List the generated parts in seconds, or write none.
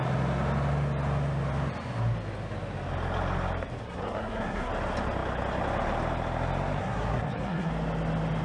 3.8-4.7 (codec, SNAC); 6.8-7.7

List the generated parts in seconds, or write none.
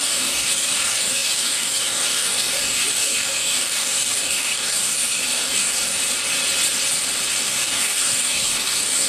0.0-6.0 (codec, DAC); 7.3-9.1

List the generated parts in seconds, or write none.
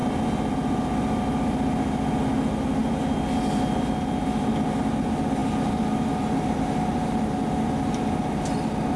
none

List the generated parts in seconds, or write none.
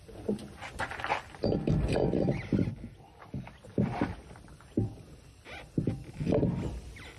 none